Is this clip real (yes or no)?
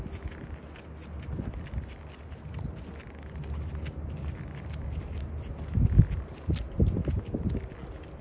yes